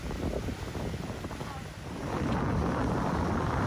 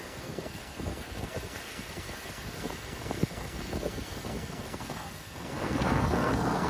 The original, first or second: first